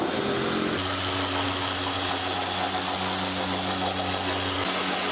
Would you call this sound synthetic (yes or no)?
no